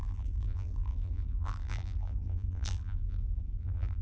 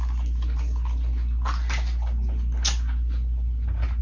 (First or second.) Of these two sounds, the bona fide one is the second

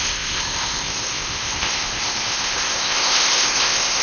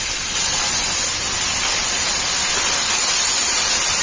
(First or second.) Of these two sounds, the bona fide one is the second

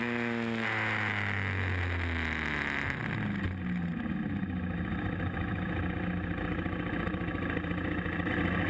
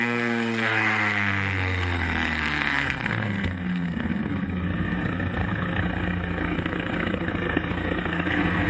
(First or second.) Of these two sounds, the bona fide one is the first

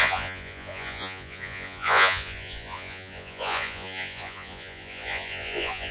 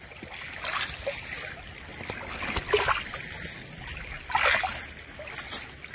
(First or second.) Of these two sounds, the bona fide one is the second